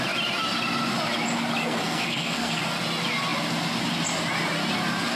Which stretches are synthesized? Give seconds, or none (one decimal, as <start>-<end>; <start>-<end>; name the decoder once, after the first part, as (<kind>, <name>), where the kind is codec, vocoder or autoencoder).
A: 1.6-2.6 (codec, SNAC)